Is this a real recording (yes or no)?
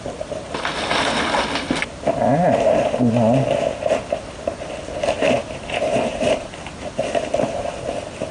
yes